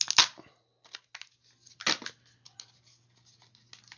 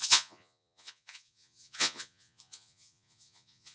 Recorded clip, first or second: first